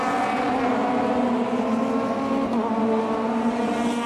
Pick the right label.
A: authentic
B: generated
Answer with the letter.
A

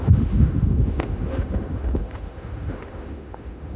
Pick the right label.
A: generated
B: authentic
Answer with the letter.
A